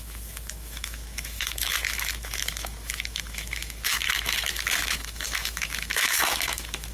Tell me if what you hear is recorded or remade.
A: remade